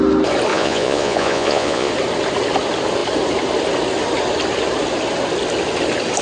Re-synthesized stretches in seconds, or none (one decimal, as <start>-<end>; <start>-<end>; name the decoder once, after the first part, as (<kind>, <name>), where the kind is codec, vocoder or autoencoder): 0.5-1.9 (vocoder, Vocos)